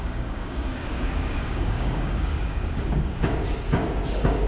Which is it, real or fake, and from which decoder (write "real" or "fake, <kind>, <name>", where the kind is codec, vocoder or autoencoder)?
fake, codec, DAC